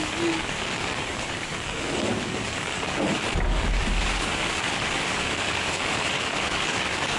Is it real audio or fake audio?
fake